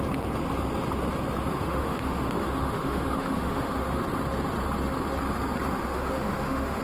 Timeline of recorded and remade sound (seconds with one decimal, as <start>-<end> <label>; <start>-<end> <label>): 0.0-1.5 recorded; 1.5-4.0 remade; 4.0-5.7 recorded; 5.7-6.8 remade